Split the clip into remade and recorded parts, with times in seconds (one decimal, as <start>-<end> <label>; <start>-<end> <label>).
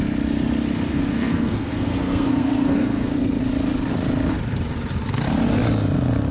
0.0-0.9 recorded; 0.9-3.4 remade; 3.4-6.3 recorded